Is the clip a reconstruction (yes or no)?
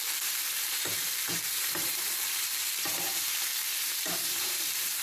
yes